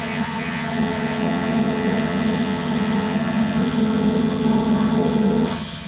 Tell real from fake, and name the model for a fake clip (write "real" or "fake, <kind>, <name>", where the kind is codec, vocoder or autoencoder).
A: fake, vocoder, HiFi-GAN